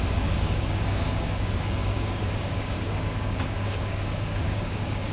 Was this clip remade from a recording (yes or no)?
yes